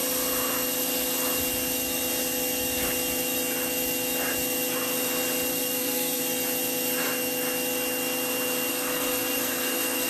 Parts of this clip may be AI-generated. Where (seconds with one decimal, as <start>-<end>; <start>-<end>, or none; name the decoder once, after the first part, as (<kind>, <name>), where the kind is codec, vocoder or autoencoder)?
5.5-6.2 (codec, SNAC); 8.7-10.1